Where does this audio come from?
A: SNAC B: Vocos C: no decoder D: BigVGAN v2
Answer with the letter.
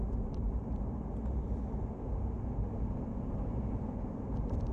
D